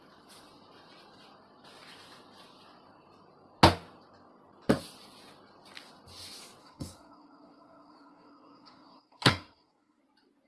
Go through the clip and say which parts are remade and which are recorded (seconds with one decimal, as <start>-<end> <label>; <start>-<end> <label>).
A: 0.0-6.6 recorded; 6.6-10.0 remade; 10.0-10.5 recorded